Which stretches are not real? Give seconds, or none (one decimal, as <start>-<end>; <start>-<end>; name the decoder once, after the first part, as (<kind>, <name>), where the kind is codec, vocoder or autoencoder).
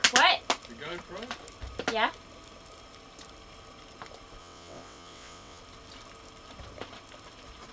4.4-5.6 (vocoder, WaveNeXt)